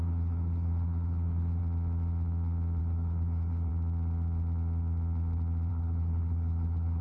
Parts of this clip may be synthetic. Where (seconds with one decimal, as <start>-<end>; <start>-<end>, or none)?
0.0-1.6; 2.8-3.7; 5.7-7.0